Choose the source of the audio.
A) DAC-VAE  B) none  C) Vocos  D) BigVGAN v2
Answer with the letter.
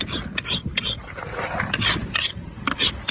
B